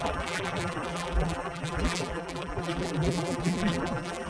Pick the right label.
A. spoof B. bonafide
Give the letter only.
A